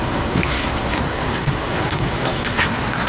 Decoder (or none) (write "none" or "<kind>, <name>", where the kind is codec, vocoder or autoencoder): codec, SNAC